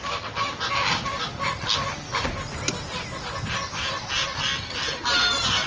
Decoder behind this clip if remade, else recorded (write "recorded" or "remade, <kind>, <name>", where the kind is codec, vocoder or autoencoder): recorded